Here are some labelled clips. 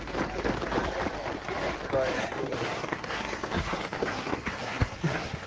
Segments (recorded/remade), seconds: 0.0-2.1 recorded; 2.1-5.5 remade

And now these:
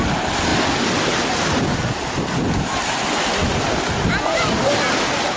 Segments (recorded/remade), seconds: 0.0-5.4 recorded